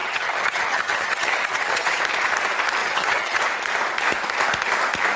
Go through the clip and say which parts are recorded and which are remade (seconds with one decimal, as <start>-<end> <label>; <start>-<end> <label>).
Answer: 0.0-2.0 remade; 2.0-2.8 recorded; 2.8-3.4 remade; 3.4-5.2 recorded